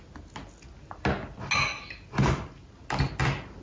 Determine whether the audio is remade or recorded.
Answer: recorded